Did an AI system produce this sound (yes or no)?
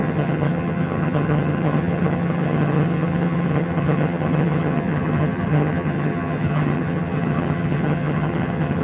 yes